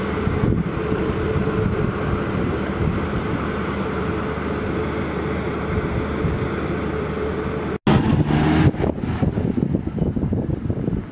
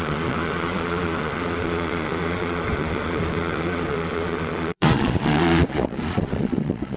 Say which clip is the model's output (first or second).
second